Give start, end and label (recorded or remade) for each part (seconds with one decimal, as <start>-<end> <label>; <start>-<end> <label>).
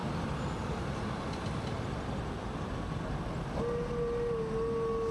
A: 0.0-5.1 recorded